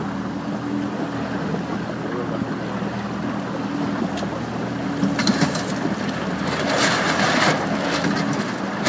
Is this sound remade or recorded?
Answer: recorded